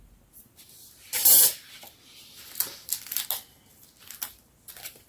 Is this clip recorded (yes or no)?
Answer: yes